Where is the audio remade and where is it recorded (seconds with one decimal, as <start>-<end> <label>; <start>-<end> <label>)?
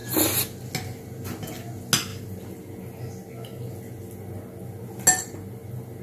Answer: 0.0-6.0 recorded